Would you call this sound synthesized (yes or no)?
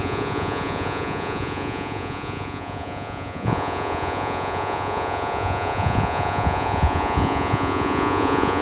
yes